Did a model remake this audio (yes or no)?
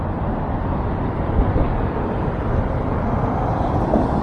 yes